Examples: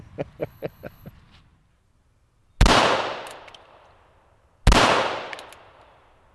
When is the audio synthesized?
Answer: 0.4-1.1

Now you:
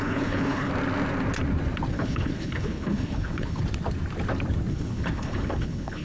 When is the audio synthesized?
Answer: 0.0-0.7; 1.9-3.6; 4.7-6.0

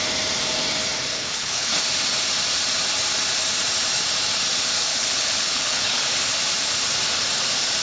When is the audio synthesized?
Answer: 1.1-1.7; 4.9-6.1

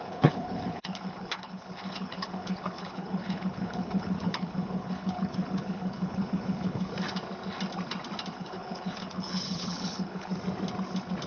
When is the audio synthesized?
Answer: 0.0-6.9; 8.3-10.3

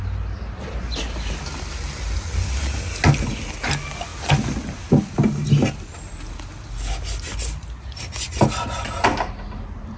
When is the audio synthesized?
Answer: none